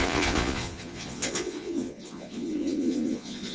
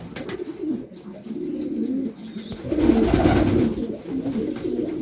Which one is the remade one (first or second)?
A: first